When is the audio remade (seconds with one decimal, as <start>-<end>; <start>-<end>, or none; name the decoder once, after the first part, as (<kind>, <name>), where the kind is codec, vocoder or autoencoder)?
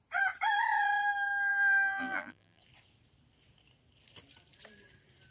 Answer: 1.5-2.6 (vocoder, BigVGAN v2)